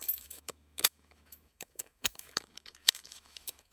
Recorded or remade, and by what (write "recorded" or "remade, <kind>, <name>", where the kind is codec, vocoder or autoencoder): remade, autoencoder, DAC-VAE